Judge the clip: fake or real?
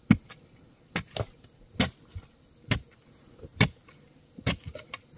real